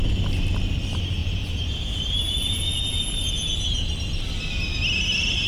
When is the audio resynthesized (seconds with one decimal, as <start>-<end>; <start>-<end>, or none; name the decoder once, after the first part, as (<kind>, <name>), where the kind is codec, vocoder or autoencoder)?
1.2-3.9 (vocoder, Vocos)